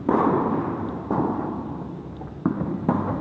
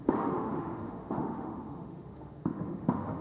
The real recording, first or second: first